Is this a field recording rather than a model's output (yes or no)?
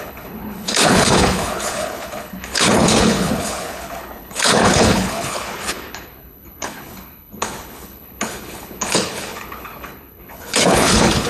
no